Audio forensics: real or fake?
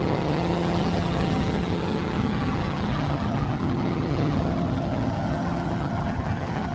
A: fake